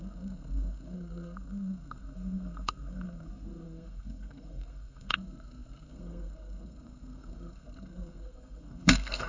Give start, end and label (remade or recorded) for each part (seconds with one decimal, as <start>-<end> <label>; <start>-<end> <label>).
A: 0.0-9.3 remade